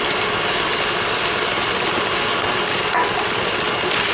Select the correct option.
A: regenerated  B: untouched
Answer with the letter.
B